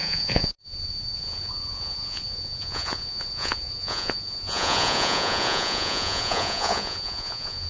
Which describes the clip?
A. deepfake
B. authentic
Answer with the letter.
A